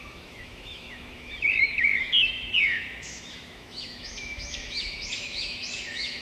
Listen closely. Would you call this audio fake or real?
fake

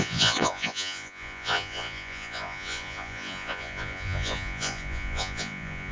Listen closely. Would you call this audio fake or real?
fake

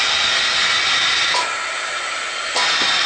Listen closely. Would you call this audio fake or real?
real